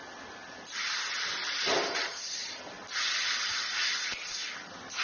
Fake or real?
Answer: real